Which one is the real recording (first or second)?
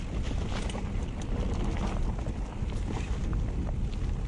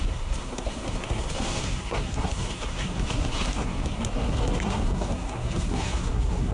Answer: first